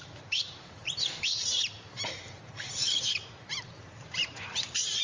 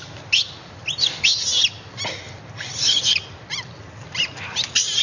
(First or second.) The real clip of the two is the second